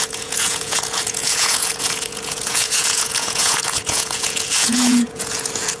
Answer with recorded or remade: remade